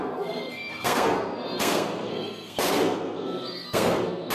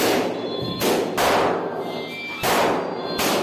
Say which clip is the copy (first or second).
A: first